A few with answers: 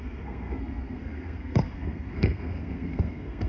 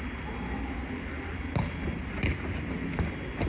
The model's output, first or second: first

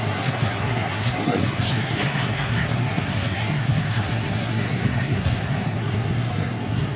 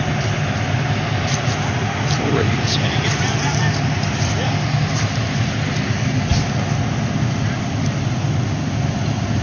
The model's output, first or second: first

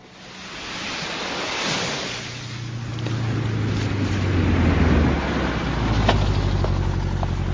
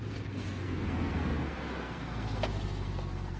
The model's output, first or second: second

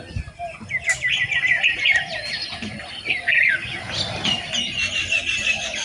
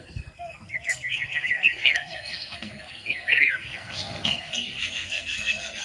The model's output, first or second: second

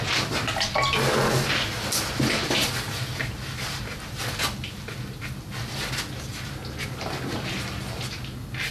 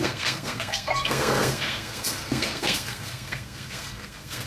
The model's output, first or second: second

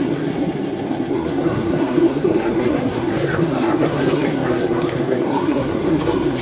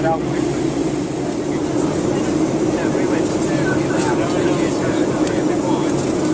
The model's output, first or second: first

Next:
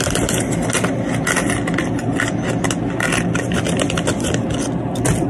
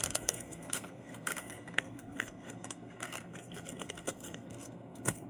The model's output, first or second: second